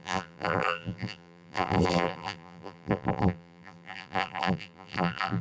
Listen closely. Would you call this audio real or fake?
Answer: fake